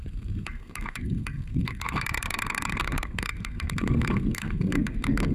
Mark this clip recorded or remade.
remade